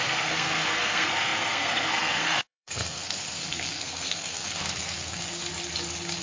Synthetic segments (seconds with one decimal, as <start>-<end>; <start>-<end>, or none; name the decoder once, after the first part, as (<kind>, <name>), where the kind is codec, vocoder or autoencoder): 0.0-5.5 (codec, SNAC)